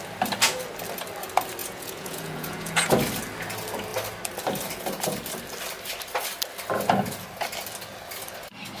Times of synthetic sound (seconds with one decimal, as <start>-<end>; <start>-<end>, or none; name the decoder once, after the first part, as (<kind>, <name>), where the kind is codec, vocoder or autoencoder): 1.6-2.9 (vocoder, Vocos)